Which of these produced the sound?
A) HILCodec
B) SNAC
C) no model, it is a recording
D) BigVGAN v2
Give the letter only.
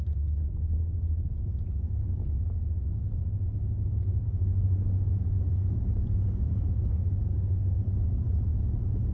C